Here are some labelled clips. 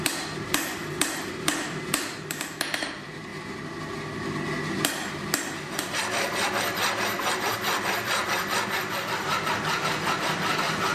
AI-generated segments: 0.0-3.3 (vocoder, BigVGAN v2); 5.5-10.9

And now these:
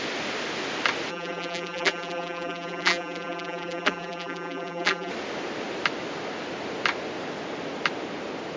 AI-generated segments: 1.1-5.1 (vocoder, BigVGAN v2)

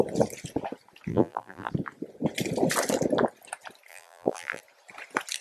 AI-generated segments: 1.1-1.7 (vocoder, BigVGAN v2); 3.9-4.6

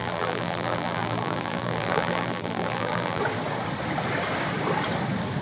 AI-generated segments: 0.0-3.2 (vocoder, BigVGAN v2)